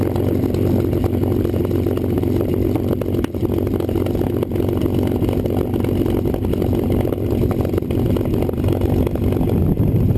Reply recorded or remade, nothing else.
recorded